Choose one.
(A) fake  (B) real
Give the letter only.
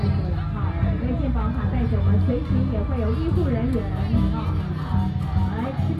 B